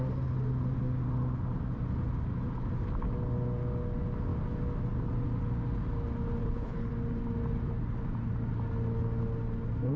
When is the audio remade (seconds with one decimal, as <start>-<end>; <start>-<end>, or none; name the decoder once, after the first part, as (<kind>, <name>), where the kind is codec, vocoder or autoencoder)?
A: 6.4-6.9 (codec, HILCodec)